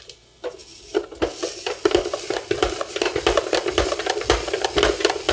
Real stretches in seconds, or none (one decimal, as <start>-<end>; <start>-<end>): 0.0-5.3